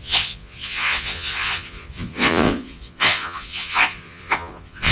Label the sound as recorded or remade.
remade